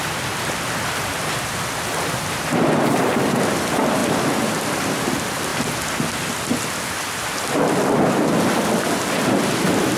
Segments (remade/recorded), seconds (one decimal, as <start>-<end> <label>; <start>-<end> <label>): 0.0-5.5 remade; 5.5-6.1 recorded; 6.1-7.3 remade; 7.3-9.0 recorded; 9.0-10.0 remade